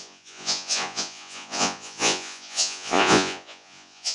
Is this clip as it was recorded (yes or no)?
no